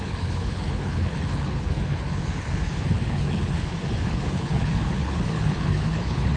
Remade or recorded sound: remade